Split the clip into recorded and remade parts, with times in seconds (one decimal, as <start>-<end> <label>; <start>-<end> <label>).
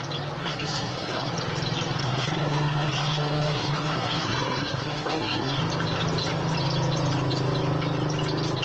0.0-0.4 recorded; 0.4-1.3 remade; 1.3-2.0 recorded; 2.0-5.6 remade; 5.6-8.6 recorded